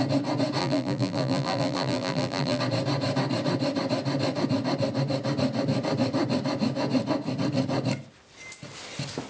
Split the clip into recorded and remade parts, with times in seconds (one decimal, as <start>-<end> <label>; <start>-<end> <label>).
0.0-0.6 recorded; 0.6-2.6 remade; 2.6-9.3 recorded